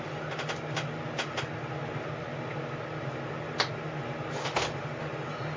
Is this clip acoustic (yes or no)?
yes